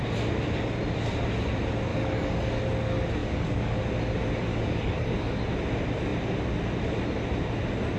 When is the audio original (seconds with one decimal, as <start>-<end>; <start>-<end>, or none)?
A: 0.0-1.9; 2.6-3.2; 3.8-4.5; 5.4-8.0